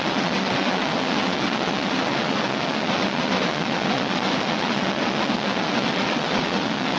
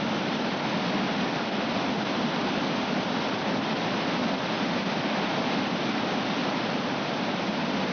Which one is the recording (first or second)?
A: second